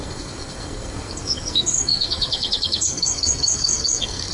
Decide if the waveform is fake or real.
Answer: fake